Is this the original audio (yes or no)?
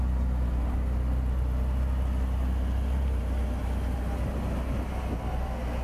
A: yes